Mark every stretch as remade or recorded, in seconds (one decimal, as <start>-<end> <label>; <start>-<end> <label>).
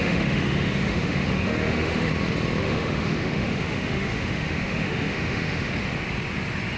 0.0-2.1 remade; 2.1-2.6 recorded; 2.6-5.7 remade; 5.7-6.8 recorded